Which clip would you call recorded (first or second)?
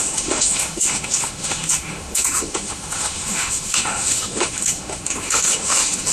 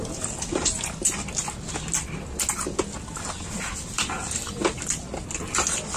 second